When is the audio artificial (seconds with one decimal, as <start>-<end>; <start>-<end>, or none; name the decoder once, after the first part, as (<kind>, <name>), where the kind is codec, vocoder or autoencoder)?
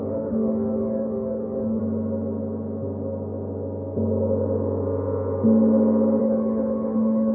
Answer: 0.0-1.8 (autoencoder, DAC-VAE); 6.2-7.3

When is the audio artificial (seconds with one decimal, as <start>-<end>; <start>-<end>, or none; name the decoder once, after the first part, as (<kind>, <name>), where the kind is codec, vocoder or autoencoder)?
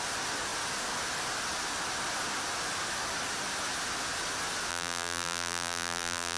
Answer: 4.7-6.4 (vocoder, BigVGAN v2)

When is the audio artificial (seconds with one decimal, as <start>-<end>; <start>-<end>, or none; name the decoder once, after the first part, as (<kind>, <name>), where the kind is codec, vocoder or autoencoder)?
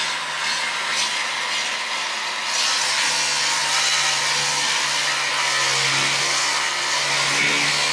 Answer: none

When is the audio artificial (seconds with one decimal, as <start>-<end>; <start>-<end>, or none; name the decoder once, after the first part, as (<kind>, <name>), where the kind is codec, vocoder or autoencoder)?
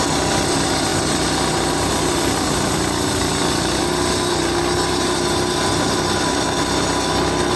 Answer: none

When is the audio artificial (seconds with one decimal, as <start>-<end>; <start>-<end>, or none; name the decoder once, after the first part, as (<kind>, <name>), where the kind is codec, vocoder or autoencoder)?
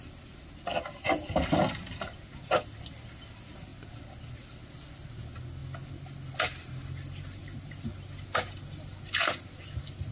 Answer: none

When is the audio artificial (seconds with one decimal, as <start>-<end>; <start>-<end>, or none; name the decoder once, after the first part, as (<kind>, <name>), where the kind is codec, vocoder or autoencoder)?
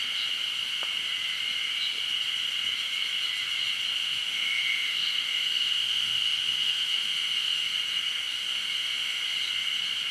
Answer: 4.0-7.7 (autoencoder, DAC-VAE); 8.5-9.2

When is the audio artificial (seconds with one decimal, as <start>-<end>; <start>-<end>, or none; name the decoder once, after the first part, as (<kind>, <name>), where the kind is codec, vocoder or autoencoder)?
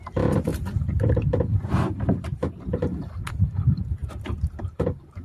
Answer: 0.0-2.4 (vocoder, BigVGAN v2); 3.3-5.2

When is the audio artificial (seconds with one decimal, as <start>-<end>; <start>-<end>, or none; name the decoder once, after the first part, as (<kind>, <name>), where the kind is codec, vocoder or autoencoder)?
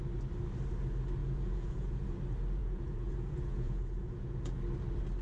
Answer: 1.2-2.2 (vocoder, Vocos); 2.6-4.6